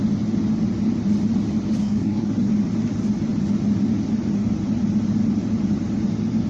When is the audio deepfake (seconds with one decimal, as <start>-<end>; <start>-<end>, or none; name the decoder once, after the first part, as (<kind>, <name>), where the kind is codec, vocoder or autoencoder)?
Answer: 1.8-2.5 (codec, SNAC)